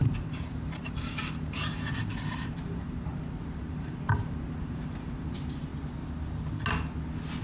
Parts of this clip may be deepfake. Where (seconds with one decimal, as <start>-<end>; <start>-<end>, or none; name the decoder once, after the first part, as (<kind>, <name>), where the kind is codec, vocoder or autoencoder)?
0.0-3.1 (vocoder, BigVGAN v2); 3.6-5.7